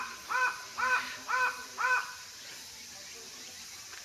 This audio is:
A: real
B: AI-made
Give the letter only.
A